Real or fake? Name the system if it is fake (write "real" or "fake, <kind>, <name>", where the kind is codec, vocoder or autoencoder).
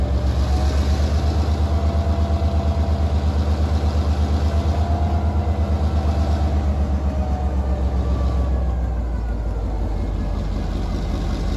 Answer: real